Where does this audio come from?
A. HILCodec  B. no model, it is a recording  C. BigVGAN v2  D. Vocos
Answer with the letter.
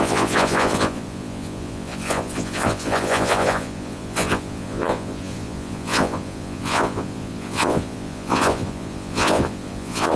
D